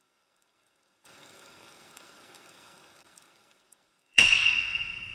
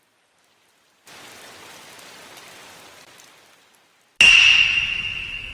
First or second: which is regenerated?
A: first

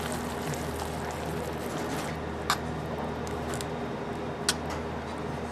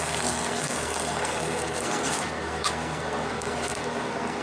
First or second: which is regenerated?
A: second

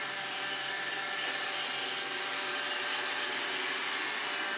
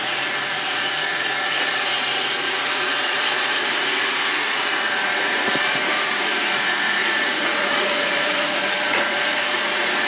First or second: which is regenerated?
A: second